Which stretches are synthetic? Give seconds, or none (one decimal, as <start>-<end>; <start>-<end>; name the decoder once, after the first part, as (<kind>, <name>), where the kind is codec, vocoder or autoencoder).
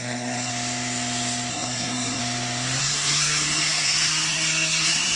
0.0-0.5 (codec, SNAC); 1.5-2.2; 2.8-5.2